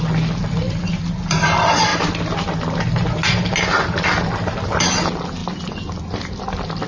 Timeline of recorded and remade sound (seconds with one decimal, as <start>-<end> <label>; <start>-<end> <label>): 0.0-6.9 recorded